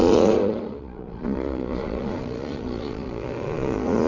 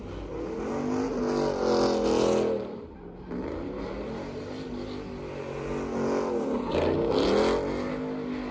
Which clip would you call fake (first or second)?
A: first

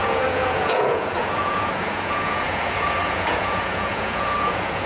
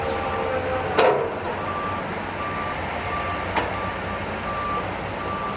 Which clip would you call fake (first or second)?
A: first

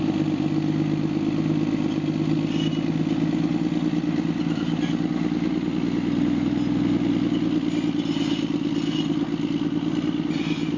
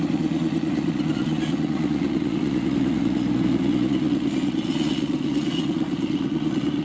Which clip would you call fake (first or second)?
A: second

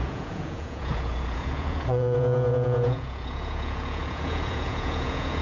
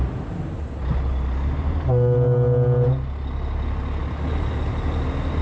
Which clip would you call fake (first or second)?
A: first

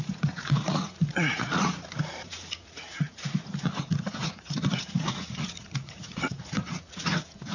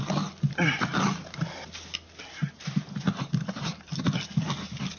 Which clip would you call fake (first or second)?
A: first